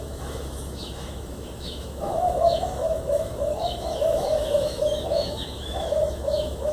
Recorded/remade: remade